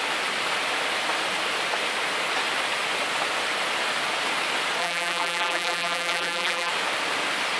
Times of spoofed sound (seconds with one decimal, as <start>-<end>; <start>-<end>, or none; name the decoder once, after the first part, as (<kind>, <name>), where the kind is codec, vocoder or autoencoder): 4.8-6.7 (vocoder, BigVGAN v2)